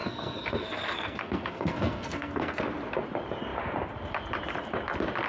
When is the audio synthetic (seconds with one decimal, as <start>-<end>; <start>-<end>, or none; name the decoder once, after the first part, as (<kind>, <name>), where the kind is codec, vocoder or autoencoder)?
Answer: 0.0-2.6 (codec, SNAC)